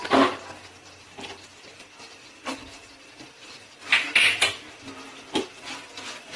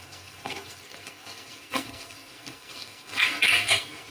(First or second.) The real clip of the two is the first